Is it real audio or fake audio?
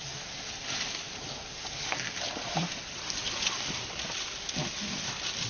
real